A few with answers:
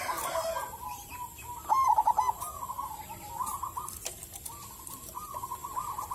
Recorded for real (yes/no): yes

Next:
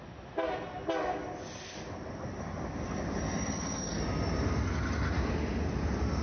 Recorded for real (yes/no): yes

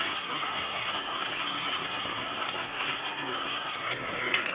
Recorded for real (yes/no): no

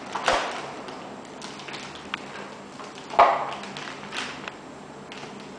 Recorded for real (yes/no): yes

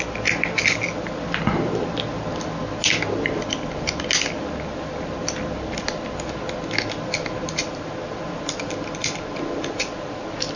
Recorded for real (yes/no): yes